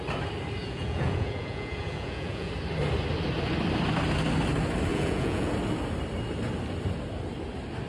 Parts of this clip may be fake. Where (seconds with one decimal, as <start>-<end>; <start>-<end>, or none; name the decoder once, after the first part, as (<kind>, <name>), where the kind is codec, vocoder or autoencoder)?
0.6-2.5 (vocoder, Vocos); 4.9-5.5

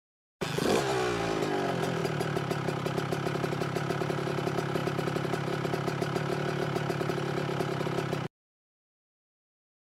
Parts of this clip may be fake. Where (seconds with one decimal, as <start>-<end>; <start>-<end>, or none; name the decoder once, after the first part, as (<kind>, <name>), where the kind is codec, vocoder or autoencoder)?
none